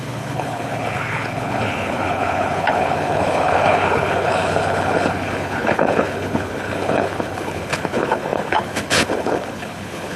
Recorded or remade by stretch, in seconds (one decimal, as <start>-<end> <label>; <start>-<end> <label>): 0.0-10.2 remade